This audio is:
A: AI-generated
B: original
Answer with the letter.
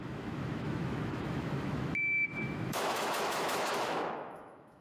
A